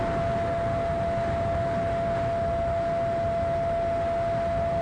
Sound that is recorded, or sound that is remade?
recorded